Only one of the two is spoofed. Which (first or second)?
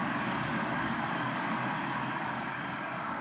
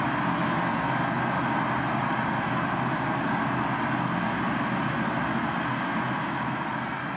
first